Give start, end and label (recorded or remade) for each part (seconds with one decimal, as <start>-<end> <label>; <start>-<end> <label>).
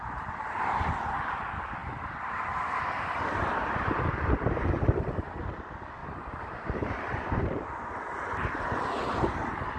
0.0-1.8 recorded; 1.8-5.4 remade; 5.4-6.0 recorded; 6.0-9.8 remade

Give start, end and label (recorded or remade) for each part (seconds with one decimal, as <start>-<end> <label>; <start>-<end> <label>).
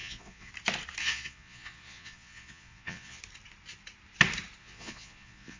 0.0-0.5 remade; 0.5-1.0 recorded; 1.0-3.2 remade; 3.2-4.6 recorded; 4.6-5.6 remade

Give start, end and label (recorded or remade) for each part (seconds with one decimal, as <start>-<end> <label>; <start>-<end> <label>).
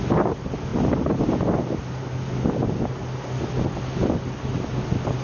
0.0-5.2 recorded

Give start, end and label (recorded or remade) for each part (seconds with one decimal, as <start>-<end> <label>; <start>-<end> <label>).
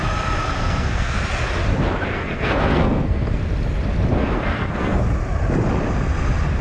0.0-0.6 recorded; 0.6-1.2 remade; 1.2-2.1 recorded; 2.1-3.4 remade; 3.4-4.1 recorded; 4.1-5.0 remade; 5.0-6.6 recorded